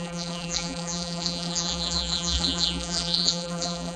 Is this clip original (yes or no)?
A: no